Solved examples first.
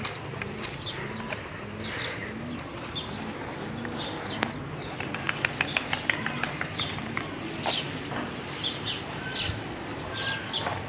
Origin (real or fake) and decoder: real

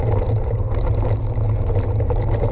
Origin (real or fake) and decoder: real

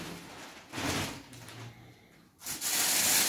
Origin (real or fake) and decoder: real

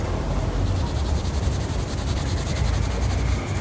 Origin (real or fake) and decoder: real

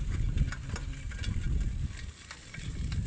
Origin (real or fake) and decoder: real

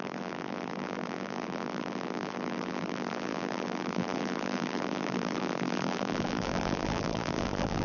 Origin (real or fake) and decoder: fake, vocoder, BigVGAN v2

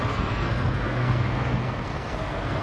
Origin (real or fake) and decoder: fake, codec, SNAC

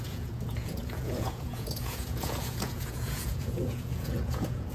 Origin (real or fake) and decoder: fake, vocoder, Vocos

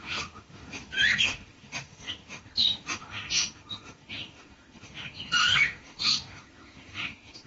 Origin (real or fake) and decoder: fake, autoencoder, DAC-VAE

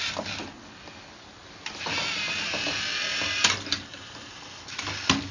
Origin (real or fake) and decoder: real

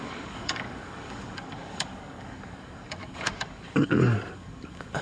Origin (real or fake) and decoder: fake, codec, DAC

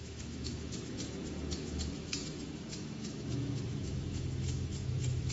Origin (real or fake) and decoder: fake, autoencoder, DAC-VAE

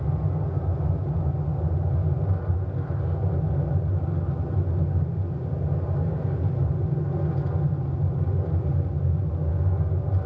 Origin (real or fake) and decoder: real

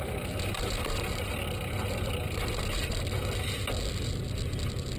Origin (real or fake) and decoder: real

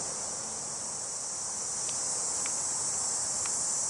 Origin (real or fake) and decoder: real